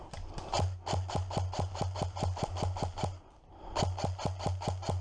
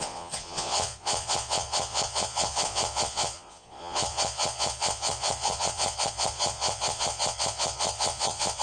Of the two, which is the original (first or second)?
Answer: first